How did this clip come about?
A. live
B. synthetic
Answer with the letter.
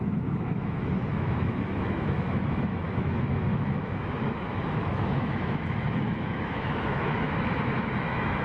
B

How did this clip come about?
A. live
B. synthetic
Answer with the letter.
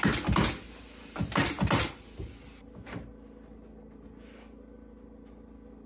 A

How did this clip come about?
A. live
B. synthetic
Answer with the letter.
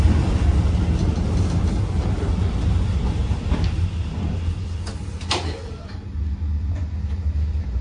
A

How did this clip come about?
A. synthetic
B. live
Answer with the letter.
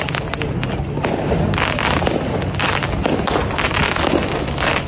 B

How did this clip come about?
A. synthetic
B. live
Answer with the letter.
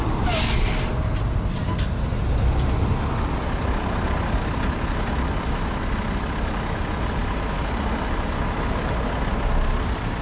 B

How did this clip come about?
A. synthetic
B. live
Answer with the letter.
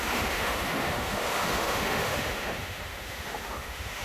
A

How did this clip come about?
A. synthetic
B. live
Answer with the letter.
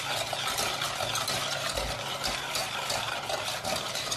B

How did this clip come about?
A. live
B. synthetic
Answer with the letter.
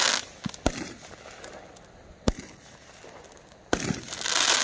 A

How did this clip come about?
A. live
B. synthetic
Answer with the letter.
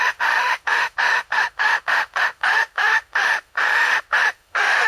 B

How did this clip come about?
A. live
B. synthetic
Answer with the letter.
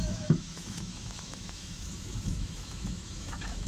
B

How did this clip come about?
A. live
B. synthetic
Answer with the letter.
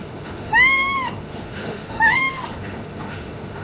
B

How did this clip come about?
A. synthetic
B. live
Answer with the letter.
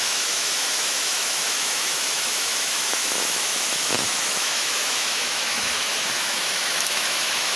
A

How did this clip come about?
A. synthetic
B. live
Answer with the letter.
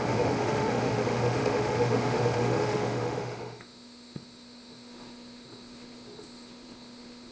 A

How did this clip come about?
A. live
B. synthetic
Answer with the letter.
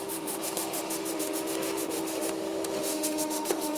B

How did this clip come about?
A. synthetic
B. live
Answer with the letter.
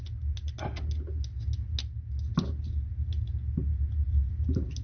B